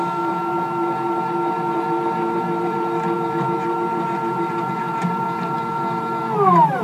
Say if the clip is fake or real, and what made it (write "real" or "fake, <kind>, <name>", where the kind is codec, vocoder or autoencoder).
fake, vocoder, BigVGAN v2